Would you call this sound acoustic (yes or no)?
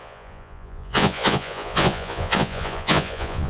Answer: no